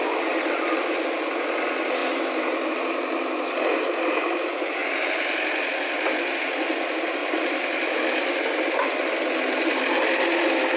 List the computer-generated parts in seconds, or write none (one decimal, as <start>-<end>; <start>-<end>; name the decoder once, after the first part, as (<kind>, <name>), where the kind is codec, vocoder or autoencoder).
7.2-9.8 (vocoder, BigVGAN v2)